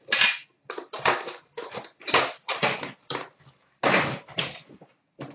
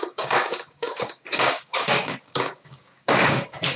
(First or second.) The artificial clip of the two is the second